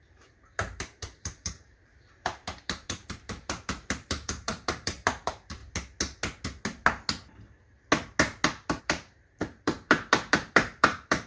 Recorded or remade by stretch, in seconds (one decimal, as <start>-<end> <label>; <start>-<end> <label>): 0.0-5.6 remade; 5.6-8.8 recorded; 8.8-11.3 remade